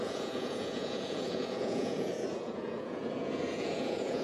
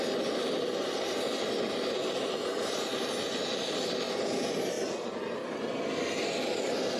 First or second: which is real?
second